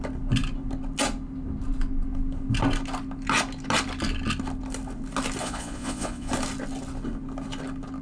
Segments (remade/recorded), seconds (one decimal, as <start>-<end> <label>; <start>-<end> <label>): 0.0-5.4 recorded; 5.4-6.3 remade; 6.3-8.0 recorded